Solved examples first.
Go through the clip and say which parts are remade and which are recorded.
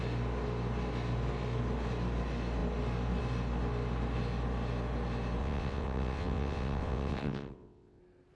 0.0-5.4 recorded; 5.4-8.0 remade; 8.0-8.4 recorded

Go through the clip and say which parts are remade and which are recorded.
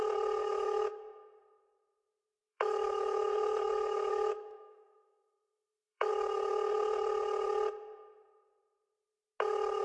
0.0-0.4 recorded; 0.4-1.0 remade; 1.0-2.5 recorded; 2.5-6.1 remade; 6.1-9.8 recorded